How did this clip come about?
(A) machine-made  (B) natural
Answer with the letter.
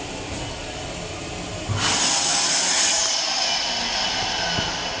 B